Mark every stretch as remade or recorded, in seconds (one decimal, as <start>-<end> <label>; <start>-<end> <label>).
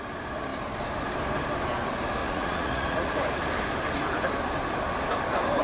0.0-2.2 recorded; 2.2-3.1 remade; 3.1-5.6 recorded